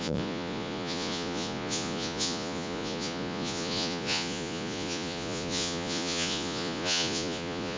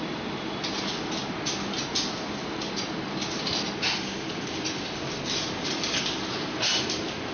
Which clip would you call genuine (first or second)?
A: second